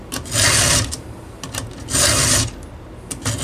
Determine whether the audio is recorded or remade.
recorded